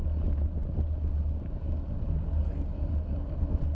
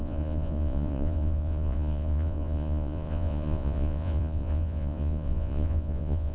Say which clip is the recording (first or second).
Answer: first